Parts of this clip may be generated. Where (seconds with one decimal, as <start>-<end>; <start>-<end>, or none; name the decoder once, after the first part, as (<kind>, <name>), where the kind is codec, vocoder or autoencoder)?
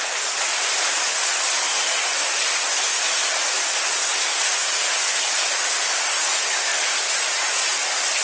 none